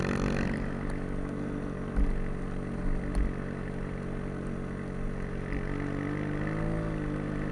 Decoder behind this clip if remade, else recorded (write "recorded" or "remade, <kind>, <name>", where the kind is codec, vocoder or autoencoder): recorded